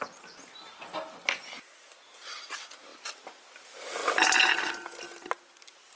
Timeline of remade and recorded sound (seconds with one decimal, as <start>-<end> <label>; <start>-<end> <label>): 0.0-6.0 recorded